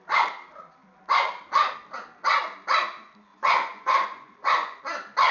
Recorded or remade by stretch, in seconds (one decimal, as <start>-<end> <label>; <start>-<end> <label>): 0.0-3.3 recorded; 3.3-4.8 remade; 4.8-5.3 recorded